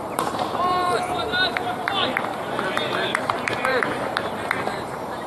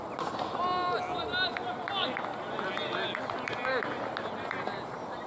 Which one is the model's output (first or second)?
first